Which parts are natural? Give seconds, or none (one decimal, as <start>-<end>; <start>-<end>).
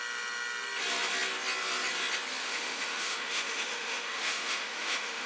0.0-2.4